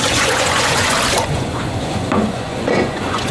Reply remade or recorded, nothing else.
remade